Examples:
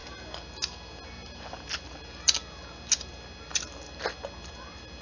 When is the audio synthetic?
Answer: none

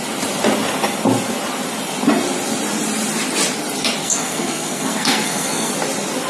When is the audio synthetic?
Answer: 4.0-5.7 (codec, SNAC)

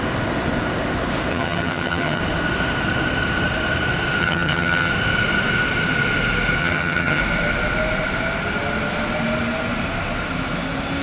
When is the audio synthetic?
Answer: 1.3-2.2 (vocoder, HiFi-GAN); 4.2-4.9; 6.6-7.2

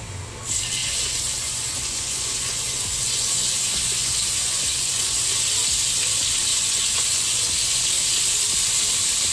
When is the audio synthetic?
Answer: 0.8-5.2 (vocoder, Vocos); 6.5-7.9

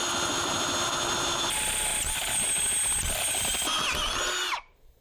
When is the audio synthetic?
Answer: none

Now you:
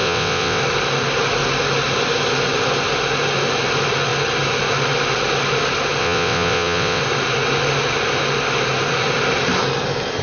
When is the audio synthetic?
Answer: 0.0-0.6 (vocoder, WaveNeXt); 6.0-7.0

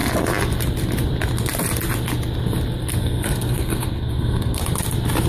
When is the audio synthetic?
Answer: 3.0-4.6 (codec, SNAC)